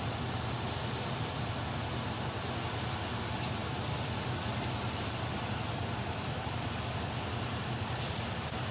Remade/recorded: recorded